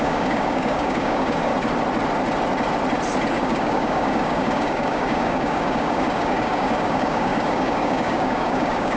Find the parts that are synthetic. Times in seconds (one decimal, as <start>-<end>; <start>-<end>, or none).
0.0-1.5; 3.3-9.0